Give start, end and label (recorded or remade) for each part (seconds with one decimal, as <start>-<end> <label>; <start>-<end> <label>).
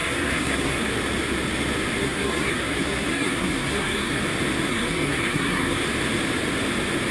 0.0-0.9 remade; 0.9-2.0 recorded; 2.0-4.2 remade; 4.2-4.7 recorded; 4.7-5.8 remade; 5.8-7.1 recorded